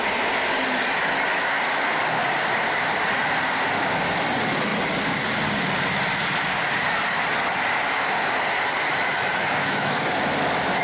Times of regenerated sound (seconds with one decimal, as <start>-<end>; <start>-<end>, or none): 9.3-10.0